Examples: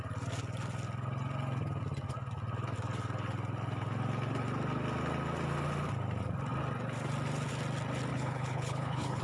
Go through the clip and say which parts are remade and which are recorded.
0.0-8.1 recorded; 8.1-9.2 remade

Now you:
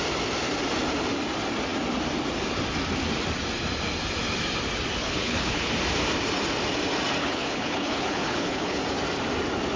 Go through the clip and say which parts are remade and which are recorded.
0.0-5.0 recorded; 5.0-5.7 remade; 5.7-7.2 recorded; 7.2-8.8 remade; 8.8-9.8 recorded

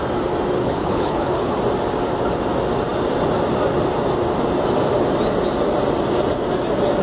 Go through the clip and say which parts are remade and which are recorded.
0.0-0.6 recorded; 0.6-1.6 remade; 1.6-7.0 recorded

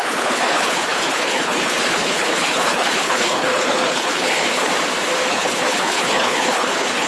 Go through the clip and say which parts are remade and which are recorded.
0.0-4.7 remade; 4.7-5.3 recorded; 5.3-7.1 remade

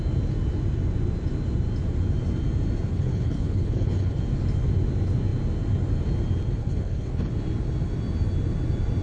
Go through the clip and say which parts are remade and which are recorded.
0.0-2.9 recorded; 2.9-4.2 remade; 4.2-6.6 recorded; 6.6-7.3 remade; 7.3-9.0 recorded

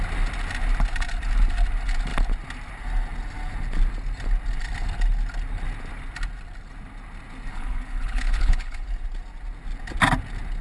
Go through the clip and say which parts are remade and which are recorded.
0.0-7.5 recorded; 7.5-8.9 remade; 8.9-10.6 recorded

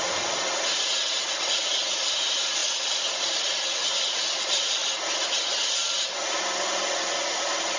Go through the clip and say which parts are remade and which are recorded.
0.0-7.8 recorded